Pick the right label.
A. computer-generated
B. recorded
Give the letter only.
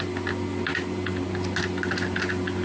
B